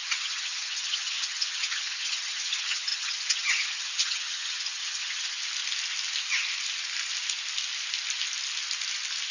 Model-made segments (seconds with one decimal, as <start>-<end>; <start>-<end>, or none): 0.0-5.4